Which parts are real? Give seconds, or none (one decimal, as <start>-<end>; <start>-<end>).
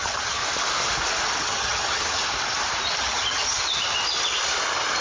0.4-1.4; 2.2-3.0; 3.6-5.0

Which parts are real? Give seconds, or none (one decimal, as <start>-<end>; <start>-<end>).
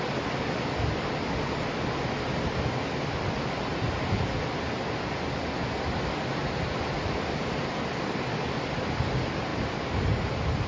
0.0-10.7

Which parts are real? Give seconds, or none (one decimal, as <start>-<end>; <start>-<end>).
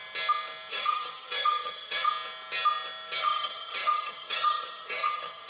0.0-0.7; 2.1-3.2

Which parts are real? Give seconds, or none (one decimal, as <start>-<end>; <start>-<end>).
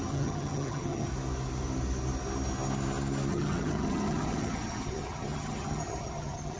1.1-3.3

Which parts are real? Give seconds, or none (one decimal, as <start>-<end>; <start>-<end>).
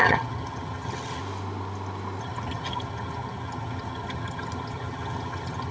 1.2-2.2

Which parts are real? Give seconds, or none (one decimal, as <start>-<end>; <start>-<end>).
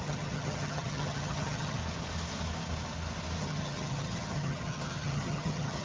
1.8-3.4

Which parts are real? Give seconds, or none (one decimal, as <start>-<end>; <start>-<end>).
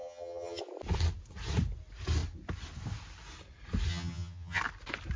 0.6-3.9; 4.6-5.2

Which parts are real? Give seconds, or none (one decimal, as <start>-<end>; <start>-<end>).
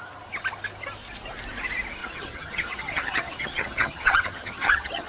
0.0-2.0